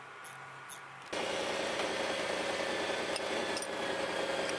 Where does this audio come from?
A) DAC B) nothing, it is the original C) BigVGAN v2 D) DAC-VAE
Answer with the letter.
B